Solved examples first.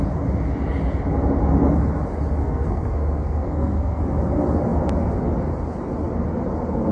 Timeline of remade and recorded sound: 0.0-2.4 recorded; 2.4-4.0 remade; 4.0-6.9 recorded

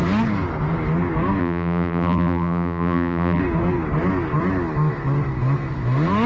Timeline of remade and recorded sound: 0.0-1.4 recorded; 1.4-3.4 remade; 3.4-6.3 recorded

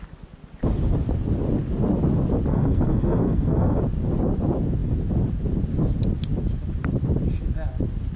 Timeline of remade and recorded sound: 0.0-2.5 recorded; 2.5-3.8 remade; 3.8-8.2 recorded

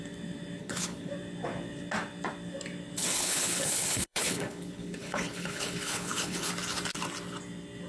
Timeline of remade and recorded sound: 0.0-0.6 recorded; 0.6-1.1 remade; 1.1-3.0 recorded; 3.0-6.5 remade; 6.5-7.9 recorded

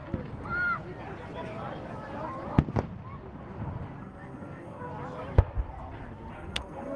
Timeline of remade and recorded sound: 0.0-4.0 recorded; 4.0-4.9 remade; 4.9-6.3 recorded; 6.3-7.0 remade

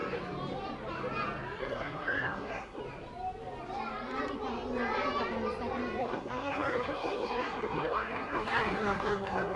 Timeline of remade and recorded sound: 0.0-1.6 recorded; 1.6-2.8 remade; 2.8-6.0 recorded; 6.0-9.6 remade

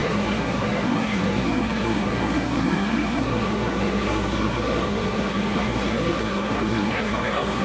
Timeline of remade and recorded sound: 0.0-7.6 remade

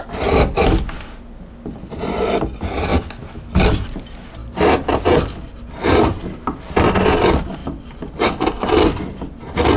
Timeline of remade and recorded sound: 0.0-9.8 recorded